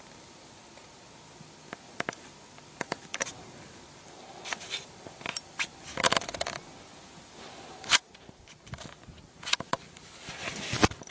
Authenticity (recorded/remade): recorded